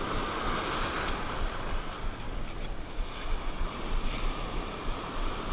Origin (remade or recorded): recorded